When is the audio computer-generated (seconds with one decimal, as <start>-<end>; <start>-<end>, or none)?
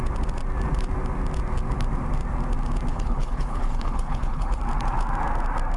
2.9-4.6